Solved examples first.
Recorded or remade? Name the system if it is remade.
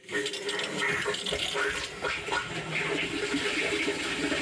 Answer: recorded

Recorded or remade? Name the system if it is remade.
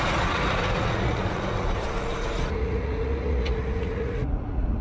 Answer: remade, vocoder, Vocos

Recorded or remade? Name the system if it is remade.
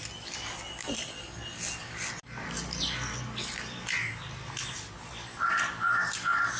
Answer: recorded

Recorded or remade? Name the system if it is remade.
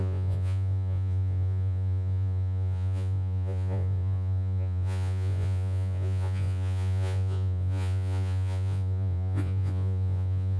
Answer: remade, vocoder, Vocos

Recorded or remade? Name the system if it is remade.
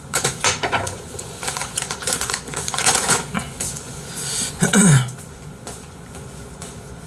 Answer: remade, vocoder, Vocos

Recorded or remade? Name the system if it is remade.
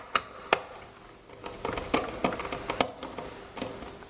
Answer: recorded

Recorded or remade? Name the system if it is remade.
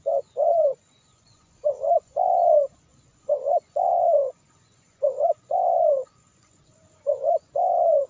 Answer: remade, vocoder, Vocos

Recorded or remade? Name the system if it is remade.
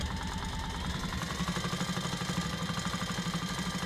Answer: recorded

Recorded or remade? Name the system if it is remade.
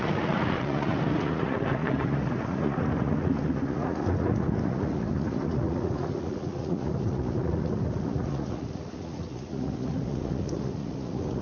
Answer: remade, vocoder, Vocos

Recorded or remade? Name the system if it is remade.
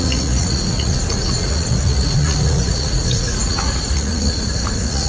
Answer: remade, vocoder, Vocos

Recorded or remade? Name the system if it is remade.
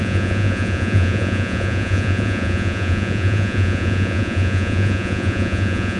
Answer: remade, vocoder, Vocos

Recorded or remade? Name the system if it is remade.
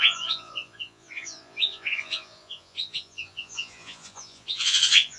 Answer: remade, vocoder, Vocos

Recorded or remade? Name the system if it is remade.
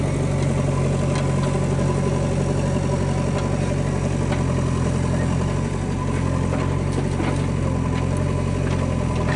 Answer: recorded